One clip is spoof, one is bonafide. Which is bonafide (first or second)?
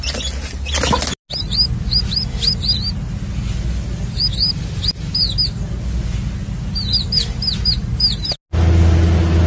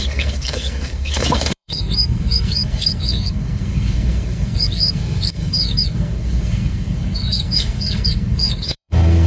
first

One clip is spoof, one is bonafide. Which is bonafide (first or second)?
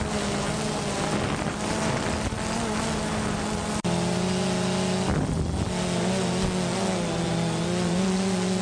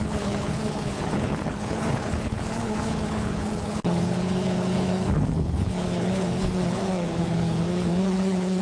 first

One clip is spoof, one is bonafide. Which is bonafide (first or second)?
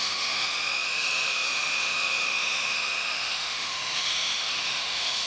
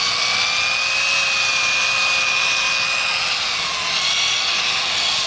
second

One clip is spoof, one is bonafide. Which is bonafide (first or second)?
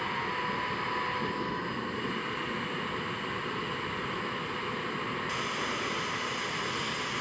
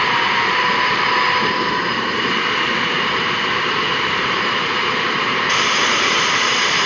first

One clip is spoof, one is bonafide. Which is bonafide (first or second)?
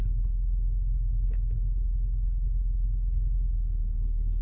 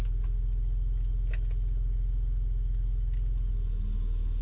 second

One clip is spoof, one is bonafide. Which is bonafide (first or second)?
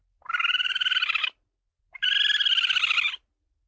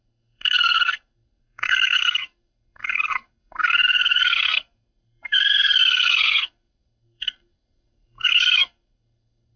first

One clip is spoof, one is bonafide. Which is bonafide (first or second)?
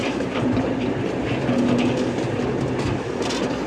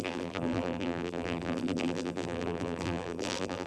first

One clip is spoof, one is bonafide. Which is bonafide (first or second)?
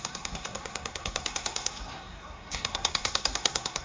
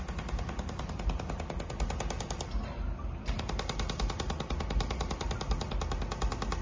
second